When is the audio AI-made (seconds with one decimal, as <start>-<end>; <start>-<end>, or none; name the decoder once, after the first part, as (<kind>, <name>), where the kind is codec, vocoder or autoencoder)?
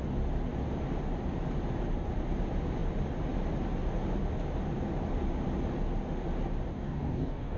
6.7-7.6 (codec, DAC)